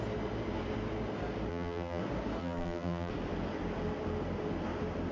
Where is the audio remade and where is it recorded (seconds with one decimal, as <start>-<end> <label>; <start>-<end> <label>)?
0.0-1.5 recorded; 1.5-2.0 remade; 2.0-2.4 recorded; 2.4-3.1 remade; 3.1-5.1 recorded